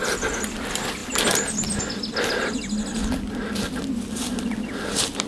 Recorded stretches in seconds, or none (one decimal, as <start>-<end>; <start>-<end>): 0.0-5.3